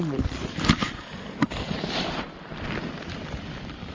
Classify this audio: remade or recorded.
remade